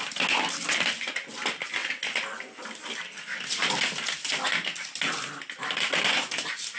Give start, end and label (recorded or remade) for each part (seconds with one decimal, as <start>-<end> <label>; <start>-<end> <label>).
0.0-6.8 recorded